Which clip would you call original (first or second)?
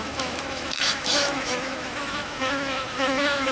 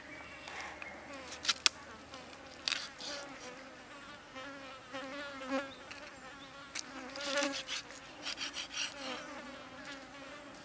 second